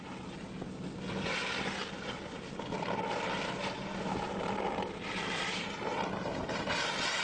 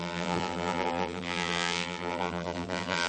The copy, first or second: second